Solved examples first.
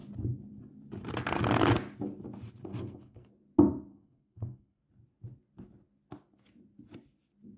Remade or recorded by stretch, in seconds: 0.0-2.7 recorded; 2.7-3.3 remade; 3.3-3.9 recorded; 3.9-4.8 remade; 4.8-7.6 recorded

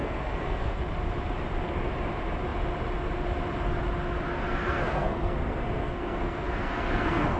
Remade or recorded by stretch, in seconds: 0.0-0.8 remade; 0.8-4.3 recorded; 4.3-7.4 remade

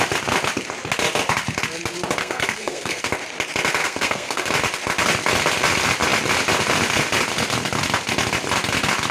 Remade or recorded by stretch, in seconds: 0.0-2.2 recorded; 2.2-3.1 remade; 3.1-3.8 recorded; 3.8-4.5 remade; 4.5-9.1 recorded

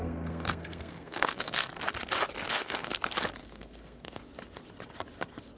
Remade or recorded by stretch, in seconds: 0.0-1.7 remade; 1.7-2.5 recorded; 2.5-2.9 remade; 2.9-3.4 recorded; 3.4-4.2 remade; 4.2-5.6 recorded

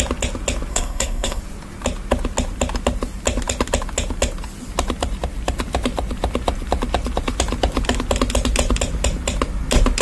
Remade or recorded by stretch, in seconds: 0.0-0.7 recorded; 0.7-1.4 remade; 1.4-10.0 recorded

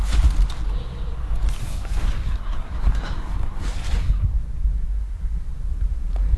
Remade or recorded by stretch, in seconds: 0.0-1.6 recorded; 1.6-4.3 remade; 4.3-6.4 recorded